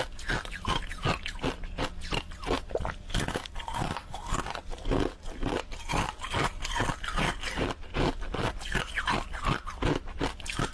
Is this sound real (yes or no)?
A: yes